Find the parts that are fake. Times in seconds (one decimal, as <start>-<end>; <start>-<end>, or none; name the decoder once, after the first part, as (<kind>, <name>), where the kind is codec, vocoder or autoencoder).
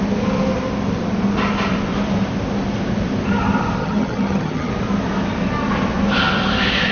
3.8-4.7 (vocoder, HiFi-GAN)